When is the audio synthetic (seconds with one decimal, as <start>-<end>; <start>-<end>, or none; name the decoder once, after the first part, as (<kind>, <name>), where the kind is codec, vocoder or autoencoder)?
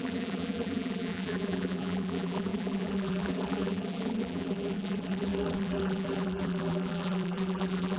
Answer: 0.0-8.0 (vocoder, BigVGAN v2)